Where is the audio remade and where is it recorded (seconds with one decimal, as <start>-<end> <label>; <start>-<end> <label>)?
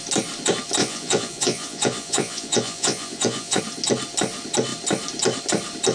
0.0-0.8 recorded; 0.8-3.6 remade; 3.6-5.9 recorded